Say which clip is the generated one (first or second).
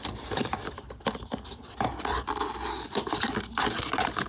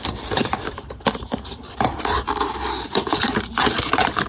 second